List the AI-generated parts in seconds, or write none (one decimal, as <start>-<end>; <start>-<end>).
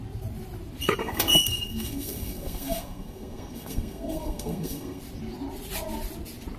1.0-5.0